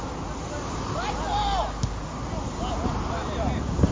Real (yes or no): yes